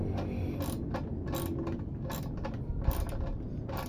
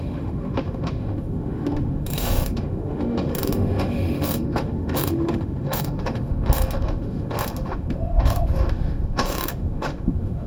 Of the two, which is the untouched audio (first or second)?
first